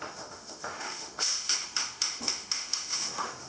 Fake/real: fake